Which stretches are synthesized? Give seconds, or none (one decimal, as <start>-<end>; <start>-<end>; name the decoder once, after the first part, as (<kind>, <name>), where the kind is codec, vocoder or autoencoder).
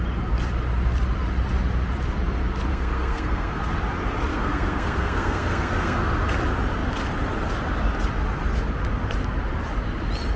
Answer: 2.7-3.6 (codec, SNAC); 4.3-6.1